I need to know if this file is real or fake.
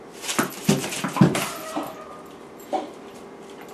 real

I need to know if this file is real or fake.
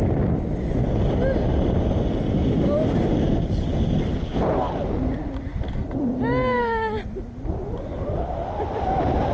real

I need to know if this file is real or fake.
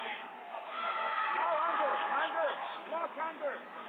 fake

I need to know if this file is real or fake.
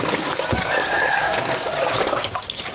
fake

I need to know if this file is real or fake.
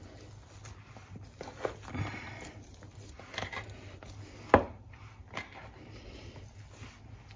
real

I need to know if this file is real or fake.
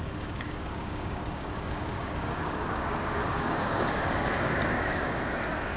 fake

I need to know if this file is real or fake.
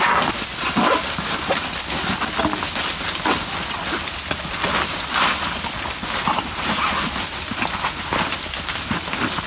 real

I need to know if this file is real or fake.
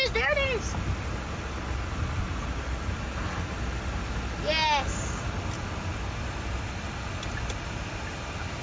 real